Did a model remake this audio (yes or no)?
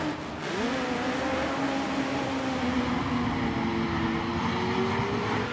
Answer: no